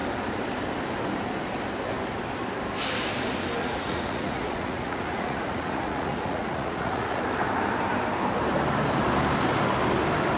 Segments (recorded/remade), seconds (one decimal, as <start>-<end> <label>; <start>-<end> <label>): 0.0-3.6 recorded; 3.6-7.2 remade; 7.2-10.4 recorded